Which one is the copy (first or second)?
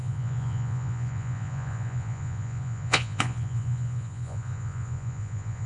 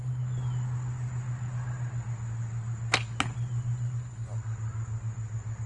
first